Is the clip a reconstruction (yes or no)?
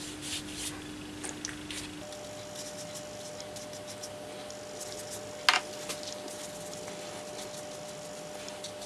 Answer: no